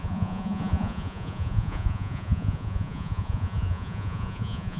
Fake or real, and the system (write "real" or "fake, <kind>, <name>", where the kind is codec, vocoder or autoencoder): fake, vocoder, Vocos